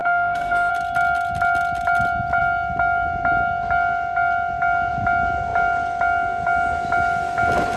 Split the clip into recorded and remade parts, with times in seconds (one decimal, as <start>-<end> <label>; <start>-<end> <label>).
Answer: 0.0-0.7 remade; 0.7-7.8 recorded